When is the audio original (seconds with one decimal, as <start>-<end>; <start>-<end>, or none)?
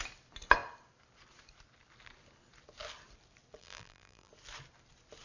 0.0-3.6; 4.3-5.2